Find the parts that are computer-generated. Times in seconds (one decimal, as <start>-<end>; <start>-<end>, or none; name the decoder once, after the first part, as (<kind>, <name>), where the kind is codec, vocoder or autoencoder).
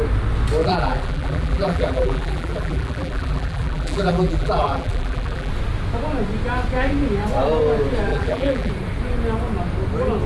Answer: 0.6-5.5 (vocoder, BigVGAN v2); 8.1-8.7